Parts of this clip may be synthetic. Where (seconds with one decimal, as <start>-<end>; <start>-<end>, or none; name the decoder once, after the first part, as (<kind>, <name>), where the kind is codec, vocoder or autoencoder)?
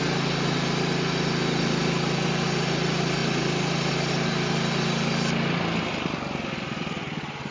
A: none